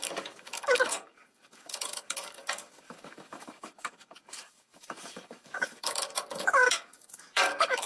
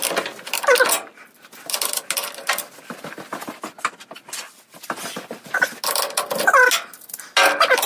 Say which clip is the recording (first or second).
second